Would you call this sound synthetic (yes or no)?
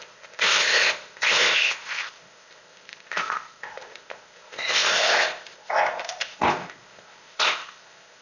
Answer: yes